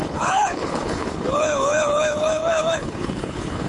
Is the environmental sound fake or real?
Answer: fake